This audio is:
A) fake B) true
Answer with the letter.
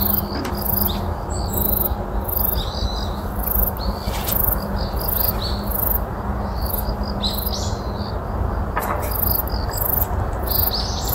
B